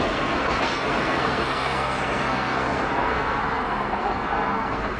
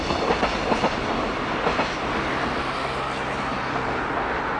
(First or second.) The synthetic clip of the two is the first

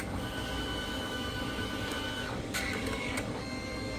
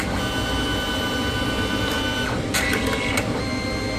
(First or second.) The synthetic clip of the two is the first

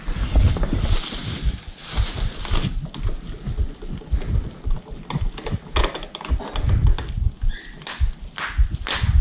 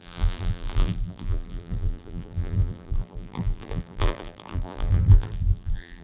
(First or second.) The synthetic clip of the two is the second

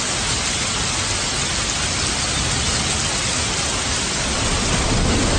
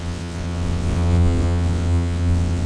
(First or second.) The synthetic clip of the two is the second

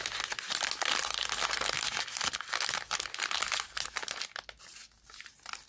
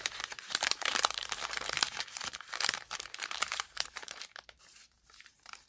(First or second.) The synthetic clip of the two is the second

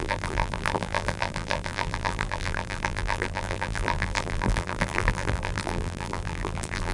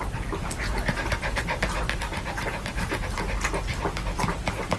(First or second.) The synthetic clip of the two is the first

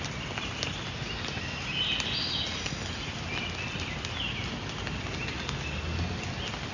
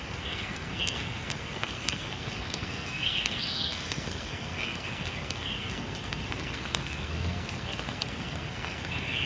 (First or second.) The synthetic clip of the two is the second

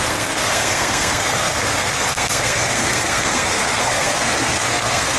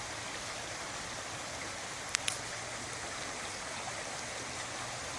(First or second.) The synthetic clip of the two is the first